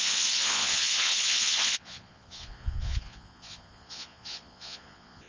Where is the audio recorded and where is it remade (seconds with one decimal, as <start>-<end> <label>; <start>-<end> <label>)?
0.0-5.3 remade